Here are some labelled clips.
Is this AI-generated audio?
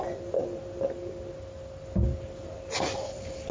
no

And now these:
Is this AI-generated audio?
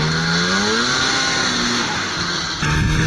no